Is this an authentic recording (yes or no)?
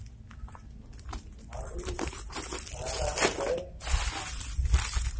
yes